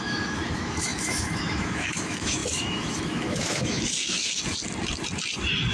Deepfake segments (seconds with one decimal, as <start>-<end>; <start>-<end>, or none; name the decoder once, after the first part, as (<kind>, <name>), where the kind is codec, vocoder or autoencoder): 0.0-4.4 (autoencoder, DAC-VAE)